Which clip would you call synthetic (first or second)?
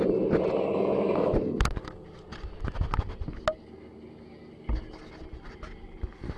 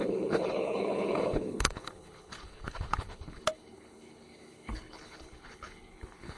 second